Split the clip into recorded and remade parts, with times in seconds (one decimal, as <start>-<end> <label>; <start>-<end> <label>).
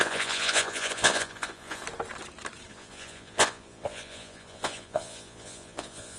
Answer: 0.0-1.8 remade; 1.8-2.7 recorded; 2.7-6.2 remade